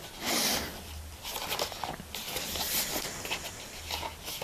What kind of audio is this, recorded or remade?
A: recorded